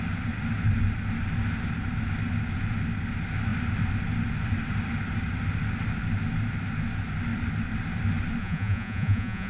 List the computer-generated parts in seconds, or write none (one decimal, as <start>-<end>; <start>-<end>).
8.4-9.5